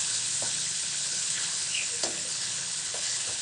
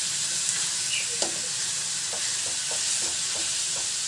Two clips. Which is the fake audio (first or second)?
first